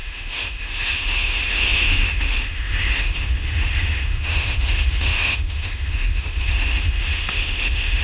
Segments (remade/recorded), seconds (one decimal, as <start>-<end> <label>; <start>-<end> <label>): 0.0-8.0 remade

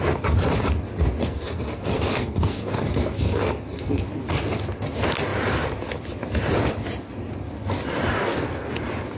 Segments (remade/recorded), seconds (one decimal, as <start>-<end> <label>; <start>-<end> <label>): 0.0-1.2 recorded; 1.2-4.3 remade; 4.3-8.2 recorded; 8.2-8.7 remade; 8.7-9.2 recorded

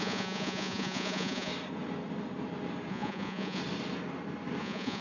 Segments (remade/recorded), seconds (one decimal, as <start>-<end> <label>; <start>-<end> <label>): 0.0-1.5 remade; 1.5-2.9 recorded; 2.9-3.6 remade; 3.6-4.6 recorded; 4.6-5.0 remade

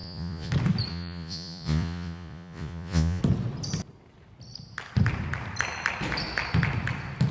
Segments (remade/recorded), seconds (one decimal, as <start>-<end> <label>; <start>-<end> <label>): 0.0-0.5 remade; 0.5-0.9 recorded; 0.9-3.2 remade; 3.2-7.3 recorded

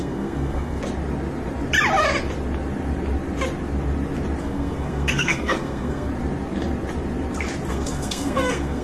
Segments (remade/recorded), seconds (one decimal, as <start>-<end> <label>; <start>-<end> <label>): 0.0-0.8 remade; 0.8-4.4 recorded; 4.4-6.1 remade; 6.1-7.7 recorded; 7.7-8.8 remade

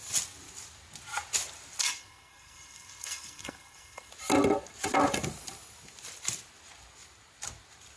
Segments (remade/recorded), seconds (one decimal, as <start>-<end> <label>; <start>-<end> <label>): 0.0-1.8 recorded; 1.8-4.1 remade; 4.1-8.0 recorded

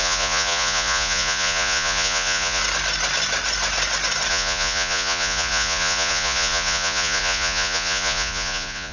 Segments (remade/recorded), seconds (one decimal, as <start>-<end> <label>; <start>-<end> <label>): 0.0-2.6 remade; 2.6-4.3 recorded; 4.3-8.9 remade